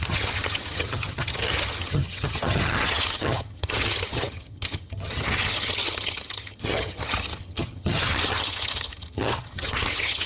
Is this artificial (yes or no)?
yes